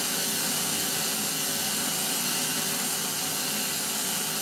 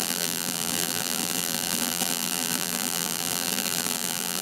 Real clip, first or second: first